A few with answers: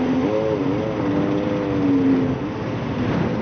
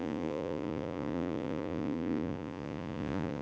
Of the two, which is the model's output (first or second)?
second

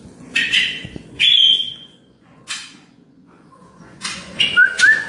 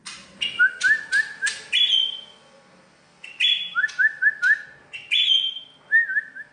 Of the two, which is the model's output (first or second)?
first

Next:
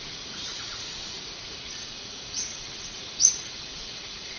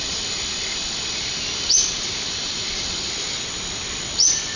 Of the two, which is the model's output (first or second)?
first